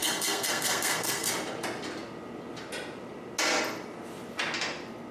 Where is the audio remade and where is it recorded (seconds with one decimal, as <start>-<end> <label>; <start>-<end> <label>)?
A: 0.0-1.3 remade; 1.3-5.1 recorded